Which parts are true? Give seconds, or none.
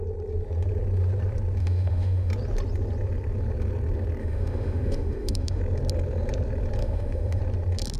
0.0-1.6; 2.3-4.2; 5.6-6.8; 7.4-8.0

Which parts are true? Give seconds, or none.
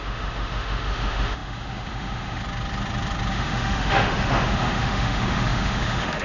2.4-3.3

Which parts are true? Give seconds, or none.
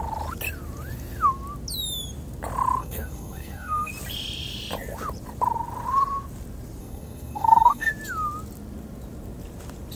0.0-2.8; 3.9-6.8; 7.9-10.0